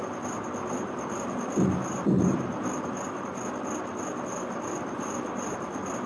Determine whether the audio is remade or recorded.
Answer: recorded